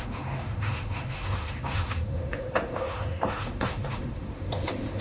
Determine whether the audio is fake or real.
fake